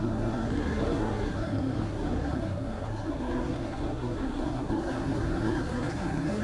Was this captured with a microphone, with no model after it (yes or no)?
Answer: no